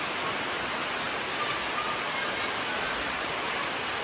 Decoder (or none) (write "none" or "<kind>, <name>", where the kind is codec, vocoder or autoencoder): none